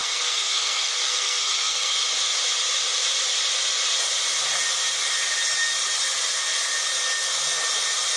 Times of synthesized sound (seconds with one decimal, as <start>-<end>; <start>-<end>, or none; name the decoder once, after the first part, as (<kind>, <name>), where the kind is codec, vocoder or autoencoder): 0.0-2.0 (codec, SNAC)